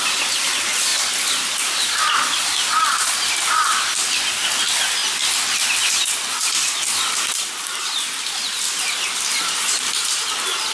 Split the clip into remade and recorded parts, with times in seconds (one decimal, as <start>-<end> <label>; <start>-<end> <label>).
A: 0.0-10.7 recorded